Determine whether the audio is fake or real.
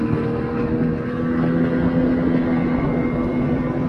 real